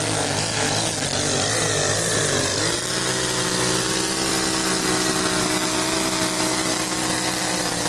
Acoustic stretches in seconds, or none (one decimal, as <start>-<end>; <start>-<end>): 0.0-7.9